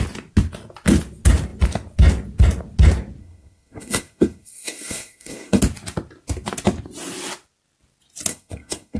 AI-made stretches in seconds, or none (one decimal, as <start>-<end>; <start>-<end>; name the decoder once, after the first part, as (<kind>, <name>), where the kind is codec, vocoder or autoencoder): 3.2-5.6 (codec, SNAC); 8.3-9.0